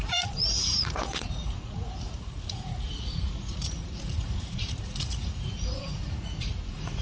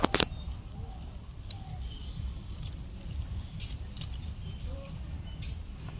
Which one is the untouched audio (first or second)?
second